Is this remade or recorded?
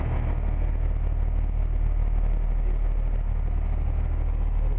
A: recorded